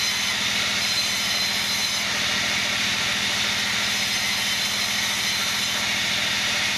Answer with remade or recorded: recorded